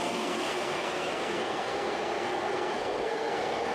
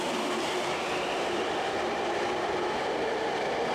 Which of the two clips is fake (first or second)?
first